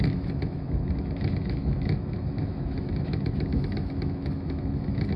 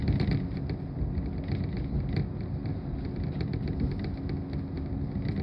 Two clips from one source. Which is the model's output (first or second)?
first